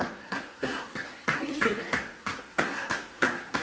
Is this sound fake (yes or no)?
yes